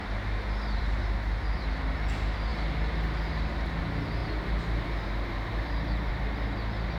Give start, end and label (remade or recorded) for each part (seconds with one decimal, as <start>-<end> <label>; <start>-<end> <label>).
0.0-7.0 recorded